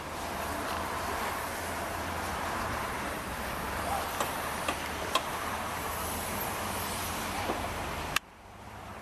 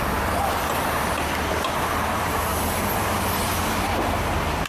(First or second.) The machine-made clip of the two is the first